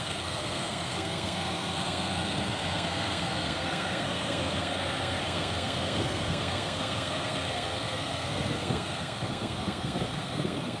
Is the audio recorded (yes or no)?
no